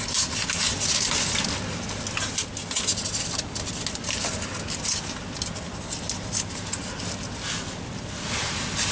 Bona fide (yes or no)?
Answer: yes